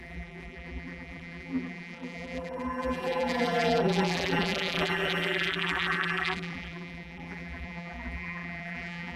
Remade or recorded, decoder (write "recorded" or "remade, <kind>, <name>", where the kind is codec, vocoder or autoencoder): remade, vocoder, BigVGAN v2